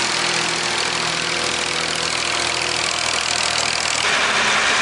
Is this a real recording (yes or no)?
yes